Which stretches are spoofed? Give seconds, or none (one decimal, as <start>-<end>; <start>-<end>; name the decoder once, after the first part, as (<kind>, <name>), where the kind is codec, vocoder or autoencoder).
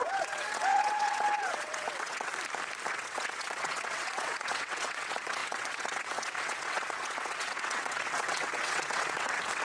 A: 0.0-2.3 (vocoder, WaveNeXt); 2.9-9.6